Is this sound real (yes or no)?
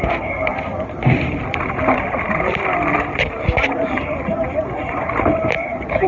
no